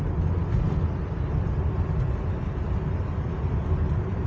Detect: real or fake real